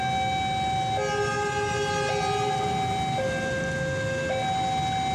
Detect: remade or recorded recorded